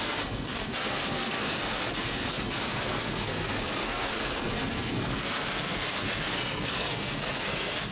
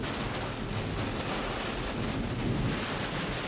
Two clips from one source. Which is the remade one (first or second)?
first